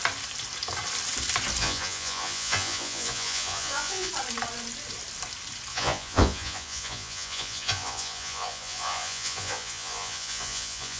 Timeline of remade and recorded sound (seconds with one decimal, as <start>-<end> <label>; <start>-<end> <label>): 0.0-1.6 recorded; 1.6-4.1 remade; 4.1-5.7 recorded; 5.7-11.0 remade